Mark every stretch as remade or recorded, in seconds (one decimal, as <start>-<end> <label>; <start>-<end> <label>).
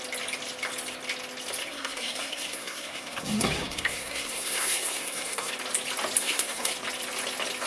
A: 0.0-1.6 recorded; 1.6-5.5 remade; 5.5-6.2 recorded; 6.2-6.7 remade; 6.7-7.7 recorded